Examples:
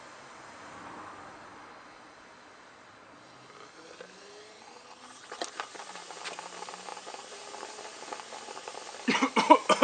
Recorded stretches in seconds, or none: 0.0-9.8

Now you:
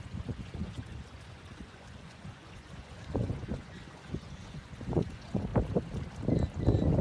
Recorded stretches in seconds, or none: 5.5-7.0

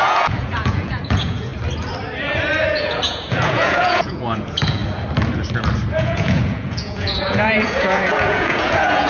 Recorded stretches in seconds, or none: 1.5-2.7; 4.8-6.0

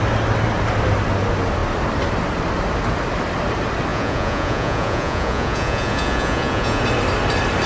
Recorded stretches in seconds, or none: 0.0-3.9; 6.8-7.7